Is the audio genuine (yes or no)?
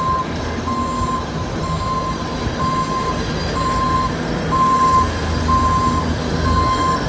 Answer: yes